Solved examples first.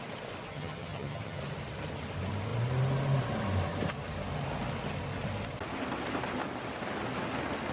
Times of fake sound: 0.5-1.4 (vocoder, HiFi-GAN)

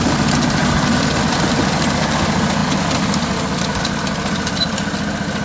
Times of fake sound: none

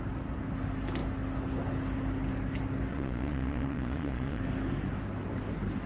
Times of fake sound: 2.9-4.4 (vocoder, Vocos)

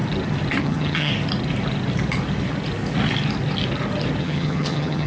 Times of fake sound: 0.6-1.1 (vocoder, HiFi-GAN); 4.2-5.1

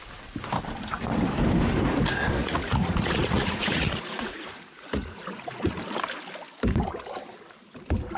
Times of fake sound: 2.4-5.7 (vocoder, Vocos)

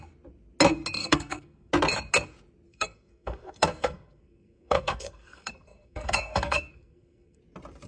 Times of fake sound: 1.0-1.7 (codec, SNAC); 2.7-7.4